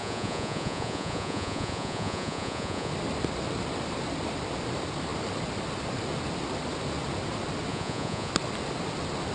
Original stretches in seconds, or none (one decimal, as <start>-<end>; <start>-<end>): 2.9-7.7; 8.3-9.3